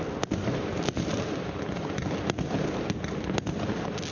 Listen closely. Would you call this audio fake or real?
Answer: real